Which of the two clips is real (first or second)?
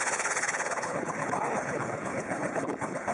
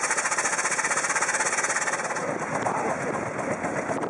second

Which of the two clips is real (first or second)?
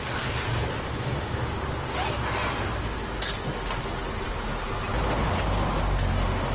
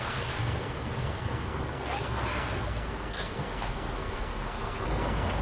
first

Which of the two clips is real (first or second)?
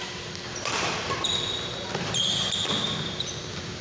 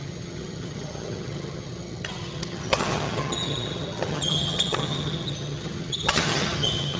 first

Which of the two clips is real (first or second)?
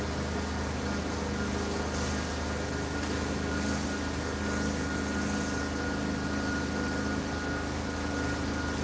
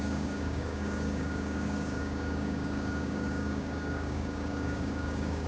first